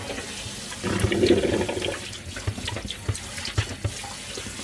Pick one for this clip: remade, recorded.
recorded